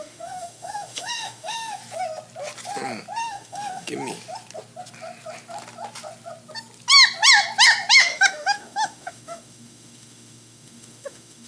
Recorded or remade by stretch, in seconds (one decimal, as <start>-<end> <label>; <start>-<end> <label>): 0.0-1.8 remade; 1.8-3.2 recorded; 3.2-3.9 remade; 3.9-7.9 recorded; 7.9-11.5 remade